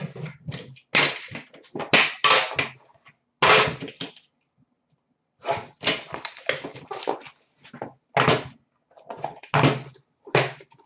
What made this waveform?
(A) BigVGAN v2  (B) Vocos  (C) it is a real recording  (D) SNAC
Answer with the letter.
C